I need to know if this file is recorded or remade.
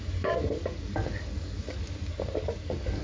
remade